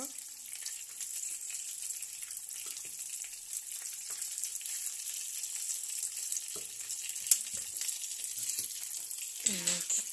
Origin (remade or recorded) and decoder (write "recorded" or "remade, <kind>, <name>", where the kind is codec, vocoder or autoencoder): recorded